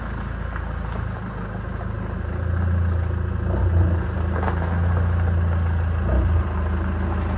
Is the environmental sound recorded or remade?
recorded